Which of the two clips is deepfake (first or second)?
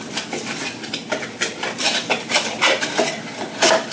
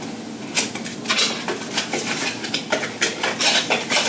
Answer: first